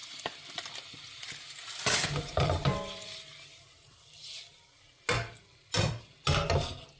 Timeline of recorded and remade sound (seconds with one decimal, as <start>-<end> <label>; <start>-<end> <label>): 0.0-2.0 recorded; 2.0-4.4 remade; 4.4-7.0 recorded